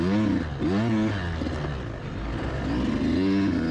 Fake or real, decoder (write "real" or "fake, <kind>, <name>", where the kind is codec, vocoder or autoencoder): real